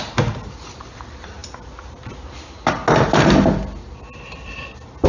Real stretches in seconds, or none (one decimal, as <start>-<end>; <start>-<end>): 0.0-5.1